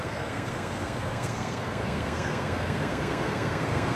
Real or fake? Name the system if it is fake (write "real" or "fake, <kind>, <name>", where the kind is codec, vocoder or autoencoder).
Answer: fake, codec, SNAC